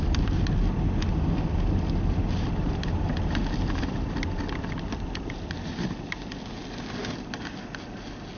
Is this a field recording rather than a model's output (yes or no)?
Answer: yes